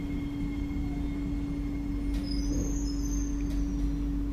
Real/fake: real